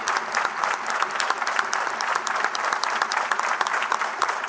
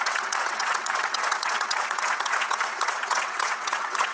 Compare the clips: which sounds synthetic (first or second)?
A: second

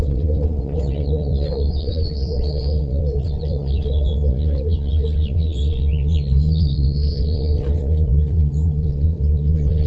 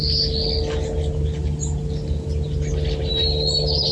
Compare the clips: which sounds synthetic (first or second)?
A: first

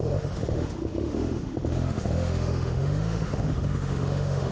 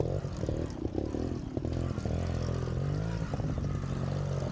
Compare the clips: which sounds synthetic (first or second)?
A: first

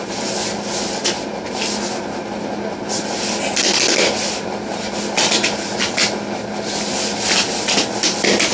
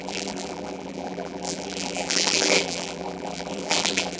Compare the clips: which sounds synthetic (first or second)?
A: second